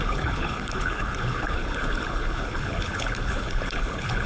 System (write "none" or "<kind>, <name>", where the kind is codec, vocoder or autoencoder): codec, HILCodec